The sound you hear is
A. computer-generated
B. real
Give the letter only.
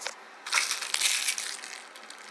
B